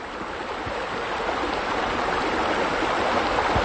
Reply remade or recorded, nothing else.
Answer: recorded